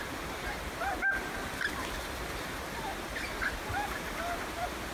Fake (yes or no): no